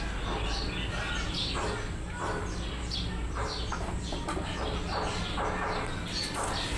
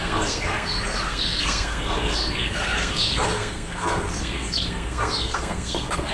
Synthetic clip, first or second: second